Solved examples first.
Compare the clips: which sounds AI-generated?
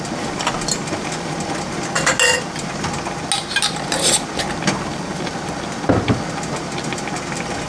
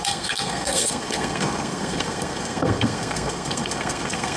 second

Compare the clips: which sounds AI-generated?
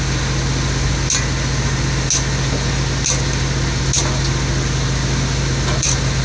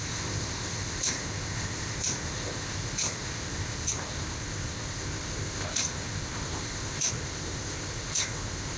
second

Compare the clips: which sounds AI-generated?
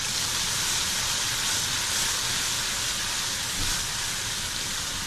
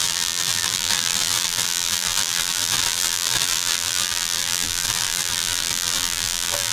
second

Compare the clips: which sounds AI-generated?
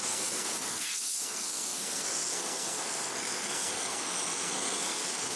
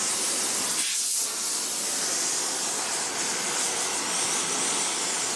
first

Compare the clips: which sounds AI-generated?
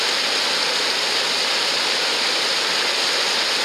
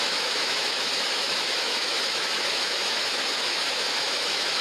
second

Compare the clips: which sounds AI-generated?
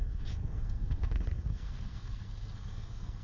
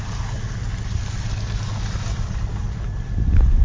first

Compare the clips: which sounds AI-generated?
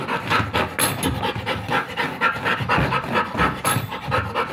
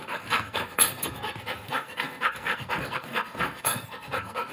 second